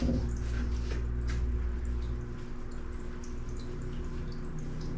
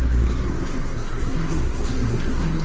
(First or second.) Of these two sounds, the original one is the first